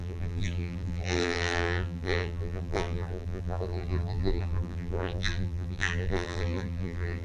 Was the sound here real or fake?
fake